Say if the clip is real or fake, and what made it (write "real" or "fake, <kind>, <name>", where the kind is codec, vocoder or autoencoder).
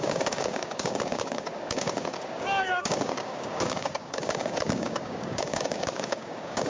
fake, codec, DAC